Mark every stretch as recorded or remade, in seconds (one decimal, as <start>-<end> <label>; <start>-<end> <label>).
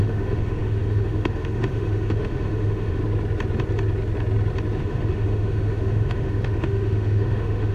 0.0-3.0 remade; 3.0-4.8 recorded; 4.8-7.7 remade